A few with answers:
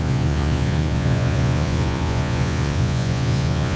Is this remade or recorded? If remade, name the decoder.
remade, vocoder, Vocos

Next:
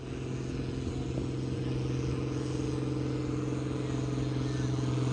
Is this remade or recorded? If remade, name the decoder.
recorded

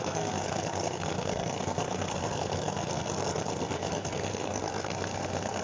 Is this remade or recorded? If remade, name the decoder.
remade, codec, SNAC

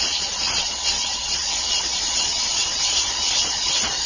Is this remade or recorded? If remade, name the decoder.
remade, vocoder, Vocos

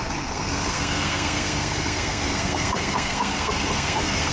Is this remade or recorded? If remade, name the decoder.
remade, codec, SNAC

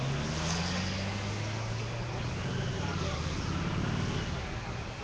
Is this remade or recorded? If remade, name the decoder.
recorded